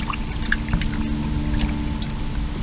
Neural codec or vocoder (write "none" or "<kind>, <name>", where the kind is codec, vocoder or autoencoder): none